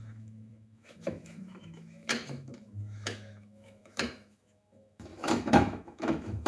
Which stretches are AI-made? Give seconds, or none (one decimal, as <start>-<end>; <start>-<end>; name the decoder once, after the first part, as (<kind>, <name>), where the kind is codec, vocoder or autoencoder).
0.0-6.5 (autoencoder, DAC-VAE)